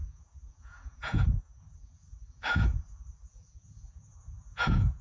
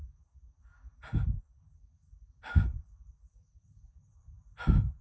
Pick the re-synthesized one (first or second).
first